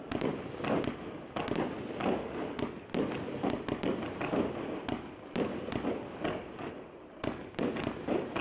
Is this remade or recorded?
recorded